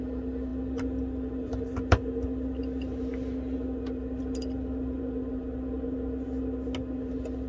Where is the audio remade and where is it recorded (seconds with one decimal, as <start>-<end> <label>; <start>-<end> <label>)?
0.0-7.5 recorded